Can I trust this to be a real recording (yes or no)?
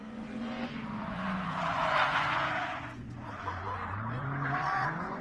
no